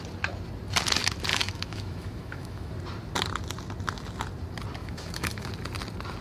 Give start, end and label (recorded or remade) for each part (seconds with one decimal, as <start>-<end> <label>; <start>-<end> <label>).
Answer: 0.0-1.3 recorded; 1.3-2.7 remade; 2.7-4.8 recorded; 4.8-5.5 remade; 5.5-6.2 recorded